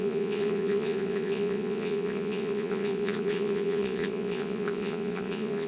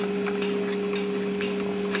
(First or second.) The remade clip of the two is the first